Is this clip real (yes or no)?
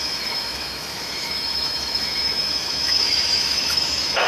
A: no